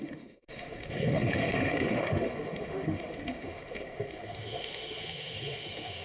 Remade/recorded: remade